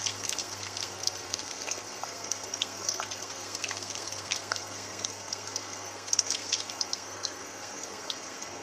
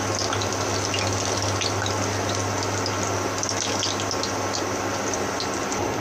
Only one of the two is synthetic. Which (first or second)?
first